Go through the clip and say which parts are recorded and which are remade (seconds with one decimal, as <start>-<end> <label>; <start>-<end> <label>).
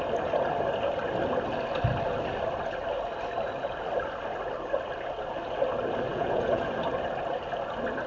0.0-6.1 recorded; 6.1-6.7 remade; 6.7-8.1 recorded